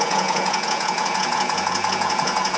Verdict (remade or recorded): remade